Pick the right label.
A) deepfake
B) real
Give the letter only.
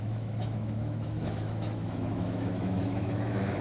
A